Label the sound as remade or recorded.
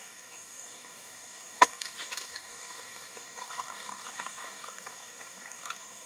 remade